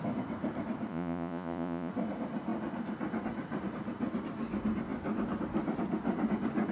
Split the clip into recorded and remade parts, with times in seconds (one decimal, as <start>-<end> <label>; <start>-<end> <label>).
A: 0.0-0.9 recorded; 0.9-1.9 remade; 1.9-6.7 recorded